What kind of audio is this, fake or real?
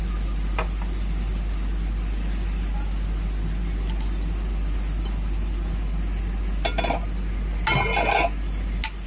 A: real